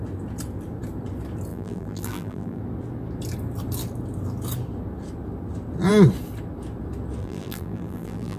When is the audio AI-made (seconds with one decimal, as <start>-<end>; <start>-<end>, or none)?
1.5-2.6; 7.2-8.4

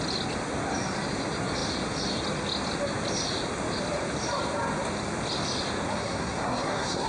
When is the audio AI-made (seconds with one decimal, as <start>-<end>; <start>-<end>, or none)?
5.9-7.1

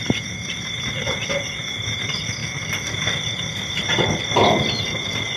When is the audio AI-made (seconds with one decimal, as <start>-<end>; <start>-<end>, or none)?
none